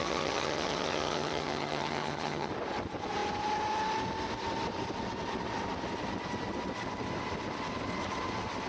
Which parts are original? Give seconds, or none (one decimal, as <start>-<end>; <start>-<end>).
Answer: 2.5-8.7